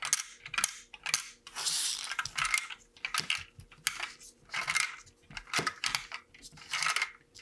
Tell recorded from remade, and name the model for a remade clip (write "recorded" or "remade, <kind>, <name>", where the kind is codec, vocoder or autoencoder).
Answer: recorded